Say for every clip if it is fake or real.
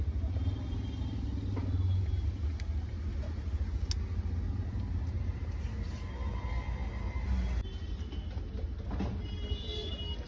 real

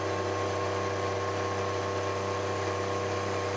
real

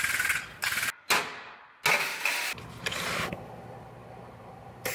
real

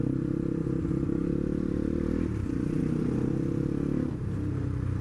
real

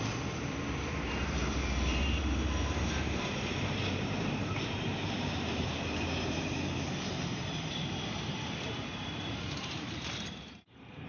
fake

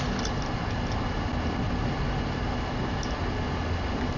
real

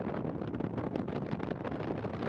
real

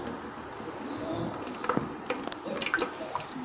fake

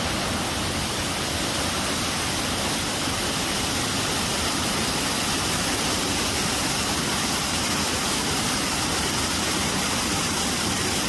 real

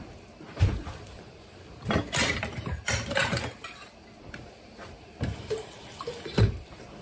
fake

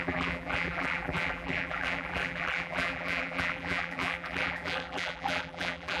fake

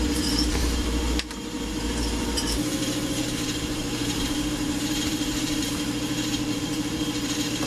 fake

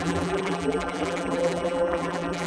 fake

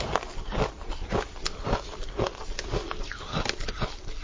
real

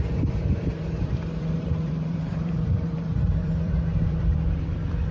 fake